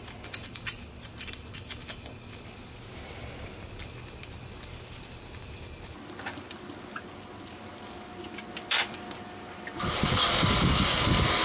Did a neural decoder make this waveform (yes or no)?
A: no